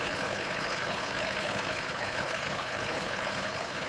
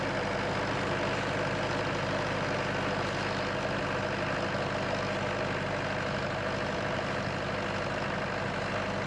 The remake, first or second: first